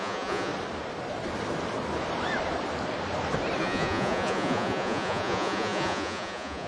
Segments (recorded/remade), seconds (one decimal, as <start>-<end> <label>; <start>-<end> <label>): 0.0-0.5 remade; 0.5-3.6 recorded; 3.6-6.7 remade